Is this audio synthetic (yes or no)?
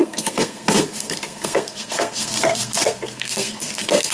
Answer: yes